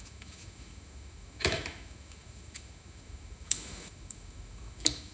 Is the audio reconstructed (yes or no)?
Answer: yes